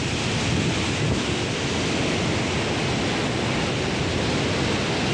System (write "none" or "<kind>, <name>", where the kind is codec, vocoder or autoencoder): none